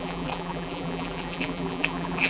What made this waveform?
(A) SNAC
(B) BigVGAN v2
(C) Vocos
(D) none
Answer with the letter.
B